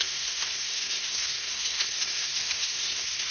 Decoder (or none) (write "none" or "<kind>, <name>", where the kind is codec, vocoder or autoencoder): codec, SNAC